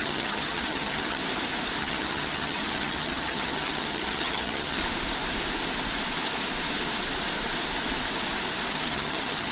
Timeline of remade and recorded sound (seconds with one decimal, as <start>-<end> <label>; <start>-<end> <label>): 0.0-1.2 remade; 1.2-1.8 recorded; 1.8-4.8 remade; 4.8-8.7 recorded; 8.7-9.5 remade